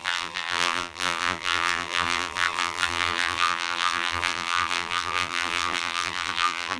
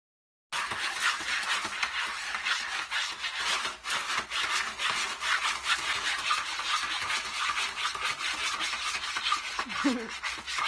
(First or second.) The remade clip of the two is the first